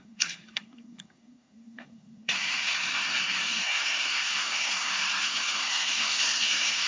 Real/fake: fake